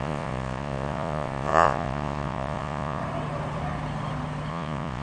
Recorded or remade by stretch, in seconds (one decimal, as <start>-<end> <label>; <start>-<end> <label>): 0.0-3.0 remade; 3.0-4.5 recorded; 4.5-5.0 remade

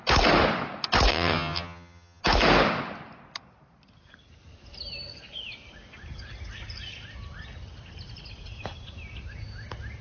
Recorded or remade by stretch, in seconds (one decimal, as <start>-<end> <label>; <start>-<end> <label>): 0.0-1.1 recorded; 1.1-2.2 remade; 2.2-10.0 recorded

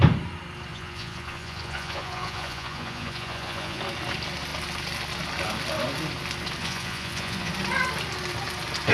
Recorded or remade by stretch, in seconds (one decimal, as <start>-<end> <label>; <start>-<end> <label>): 0.0-0.7 recorded; 0.7-3.8 remade; 3.8-6.6 recorded; 6.6-7.5 remade; 7.5-8.9 recorded

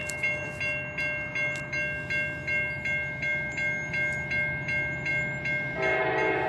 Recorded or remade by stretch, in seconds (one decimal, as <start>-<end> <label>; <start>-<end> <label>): 0.0-6.5 recorded

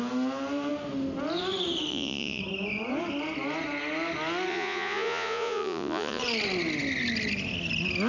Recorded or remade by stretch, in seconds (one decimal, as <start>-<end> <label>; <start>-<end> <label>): 0.0-1.9 recorded; 1.9-2.4 remade; 2.4-4.5 recorded; 4.5-6.2 remade; 6.2-8.1 recorded